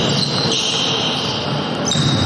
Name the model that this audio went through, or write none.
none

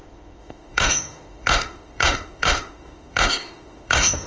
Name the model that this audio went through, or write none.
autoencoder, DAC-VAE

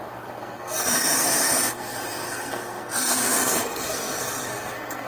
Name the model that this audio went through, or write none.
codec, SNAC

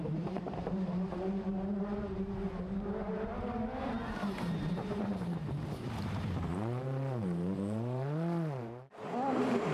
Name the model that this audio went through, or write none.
vocoder, BigVGAN v2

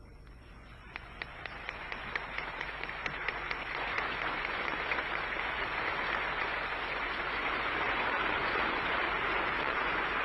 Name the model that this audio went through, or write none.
vocoder, Vocos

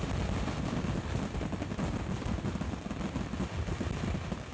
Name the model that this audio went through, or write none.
none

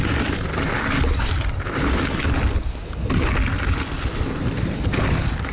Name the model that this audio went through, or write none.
none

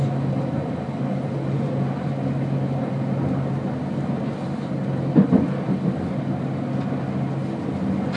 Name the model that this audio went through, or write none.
none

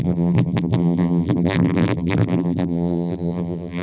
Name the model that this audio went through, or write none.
vocoder, BigVGAN v2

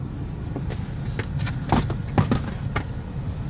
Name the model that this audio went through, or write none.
none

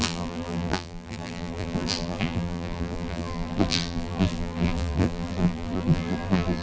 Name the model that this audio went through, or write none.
vocoder, BigVGAN v2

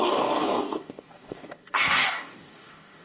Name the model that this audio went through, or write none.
codec, DAC